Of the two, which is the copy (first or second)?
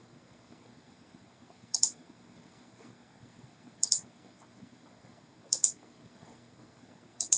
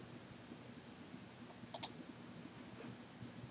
first